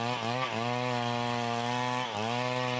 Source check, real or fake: real